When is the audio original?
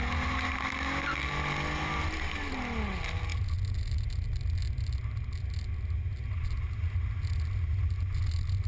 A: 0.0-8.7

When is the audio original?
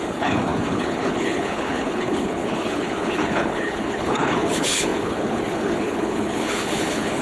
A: none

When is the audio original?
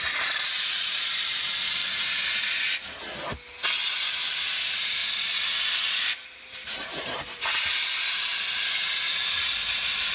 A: 1.8-4.1; 5.0-6.0